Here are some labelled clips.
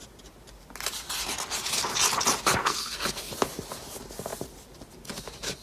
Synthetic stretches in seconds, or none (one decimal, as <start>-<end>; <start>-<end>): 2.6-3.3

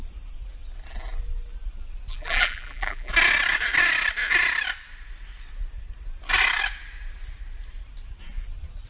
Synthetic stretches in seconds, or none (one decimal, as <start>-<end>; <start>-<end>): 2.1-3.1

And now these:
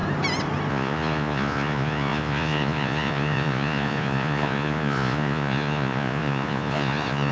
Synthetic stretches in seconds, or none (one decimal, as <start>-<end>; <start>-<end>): 0.7-7.3

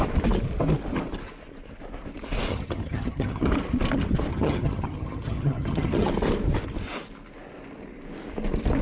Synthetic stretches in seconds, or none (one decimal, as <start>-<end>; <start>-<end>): 2.5-3.5; 4.3-6.1

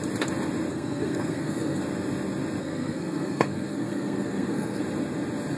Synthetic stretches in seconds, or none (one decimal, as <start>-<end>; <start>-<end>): 0.7-1.8; 2.6-4.8

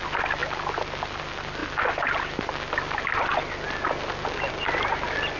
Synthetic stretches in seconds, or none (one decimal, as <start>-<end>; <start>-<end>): none

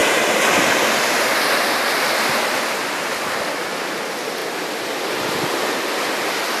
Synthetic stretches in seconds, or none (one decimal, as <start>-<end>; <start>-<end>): 0.0-4.4; 6.0-6.6

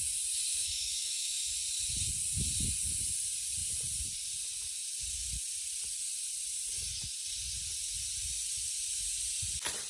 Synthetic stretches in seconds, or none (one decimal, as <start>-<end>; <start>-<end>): 0.6-1.5